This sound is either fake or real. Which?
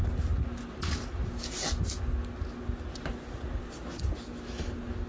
real